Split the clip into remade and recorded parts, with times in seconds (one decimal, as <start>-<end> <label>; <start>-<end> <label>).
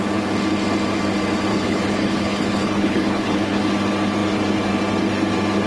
0.0-1.5 recorded; 1.5-3.6 remade; 3.6-5.7 recorded